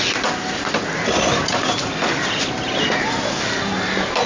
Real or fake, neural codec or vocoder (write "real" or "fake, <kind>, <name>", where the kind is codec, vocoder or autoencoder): real